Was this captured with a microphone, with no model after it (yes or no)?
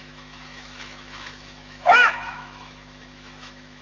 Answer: no